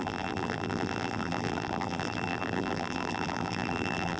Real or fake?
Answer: fake